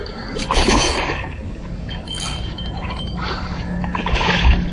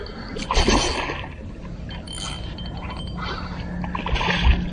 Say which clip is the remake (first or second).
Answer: first